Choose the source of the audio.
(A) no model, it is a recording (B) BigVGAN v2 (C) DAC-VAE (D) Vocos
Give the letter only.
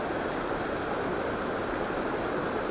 A